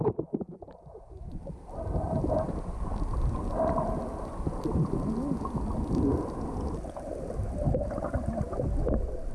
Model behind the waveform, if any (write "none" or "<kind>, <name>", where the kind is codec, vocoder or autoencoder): none